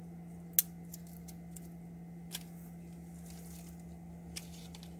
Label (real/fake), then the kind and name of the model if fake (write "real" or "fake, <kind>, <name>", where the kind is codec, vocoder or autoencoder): real